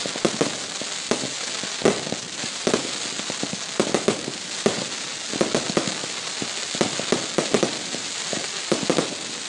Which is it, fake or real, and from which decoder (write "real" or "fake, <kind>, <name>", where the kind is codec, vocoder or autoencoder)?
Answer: real